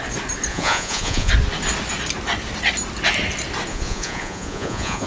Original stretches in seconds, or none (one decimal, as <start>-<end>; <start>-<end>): 0.0-0.5; 1.3-3.7